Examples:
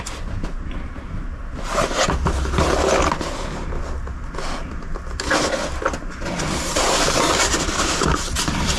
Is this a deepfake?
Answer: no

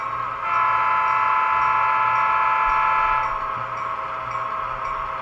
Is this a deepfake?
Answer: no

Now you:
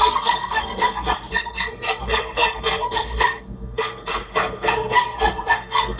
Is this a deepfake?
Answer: yes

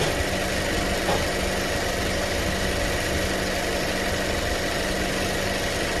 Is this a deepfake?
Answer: no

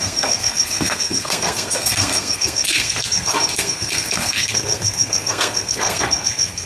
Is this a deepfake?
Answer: yes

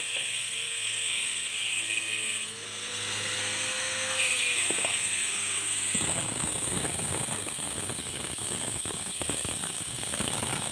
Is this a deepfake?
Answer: yes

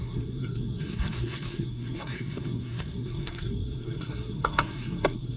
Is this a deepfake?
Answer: yes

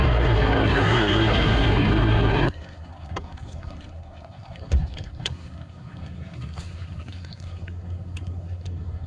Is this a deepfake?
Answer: yes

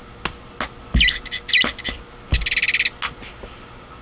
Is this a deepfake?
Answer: no